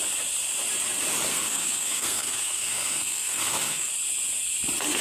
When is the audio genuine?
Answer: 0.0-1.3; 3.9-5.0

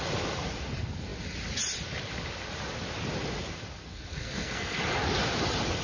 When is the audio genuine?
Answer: 0.0-3.8; 4.8-5.8

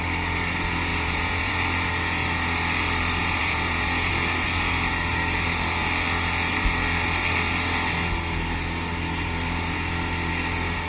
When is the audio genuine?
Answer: 0.0-0.9; 1.5-3.2; 4.1-10.9

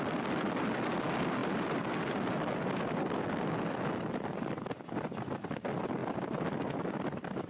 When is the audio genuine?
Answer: 0.0-7.5